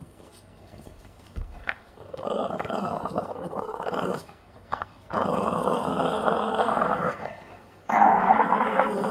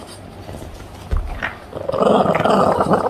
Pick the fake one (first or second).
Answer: first